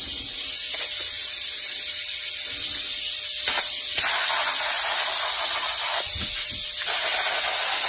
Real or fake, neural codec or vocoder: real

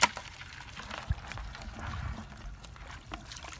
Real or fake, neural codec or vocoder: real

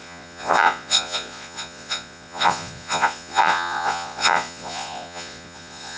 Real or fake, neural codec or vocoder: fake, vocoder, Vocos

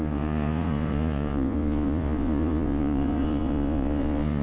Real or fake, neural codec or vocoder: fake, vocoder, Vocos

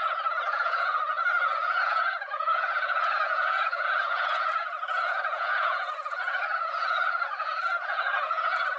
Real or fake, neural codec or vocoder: fake, vocoder, Vocos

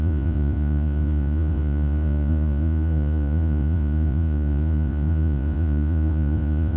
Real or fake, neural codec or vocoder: fake, vocoder, Vocos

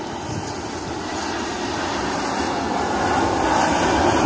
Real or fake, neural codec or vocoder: real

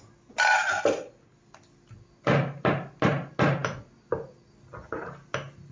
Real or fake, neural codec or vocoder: real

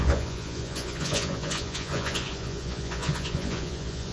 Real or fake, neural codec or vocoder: fake, vocoder, Vocos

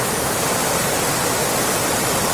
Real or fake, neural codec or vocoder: real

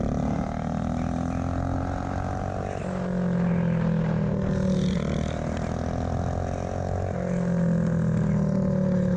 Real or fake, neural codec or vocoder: real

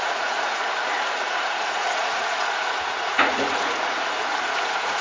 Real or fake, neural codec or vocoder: fake, vocoder, Vocos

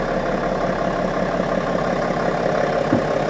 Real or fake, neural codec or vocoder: real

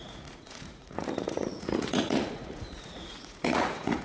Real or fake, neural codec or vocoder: fake, vocoder, Vocos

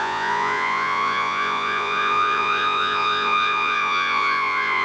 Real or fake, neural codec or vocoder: fake, vocoder, Vocos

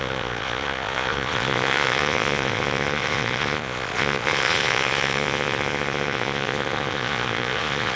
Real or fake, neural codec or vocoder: fake, vocoder, Vocos